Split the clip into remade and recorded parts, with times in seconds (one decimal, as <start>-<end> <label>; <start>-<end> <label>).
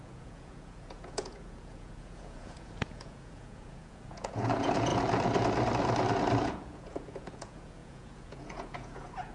0.0-4.9 remade; 4.9-6.4 recorded; 6.4-9.3 remade